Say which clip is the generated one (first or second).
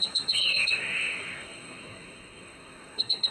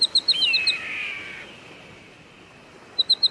first